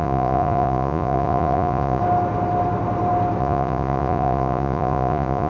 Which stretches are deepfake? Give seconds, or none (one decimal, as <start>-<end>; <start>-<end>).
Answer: 0.0-2.0; 3.4-5.5